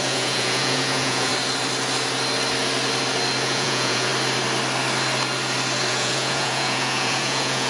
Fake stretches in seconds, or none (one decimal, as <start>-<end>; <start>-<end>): 0.0-1.3; 3.4-4.1; 5.9-7.7